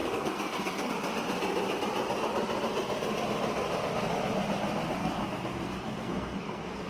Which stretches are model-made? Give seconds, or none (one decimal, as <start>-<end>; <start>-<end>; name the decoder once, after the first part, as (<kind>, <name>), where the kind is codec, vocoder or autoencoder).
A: 0.0-0.9 (codec, SNAC); 5.0-6.9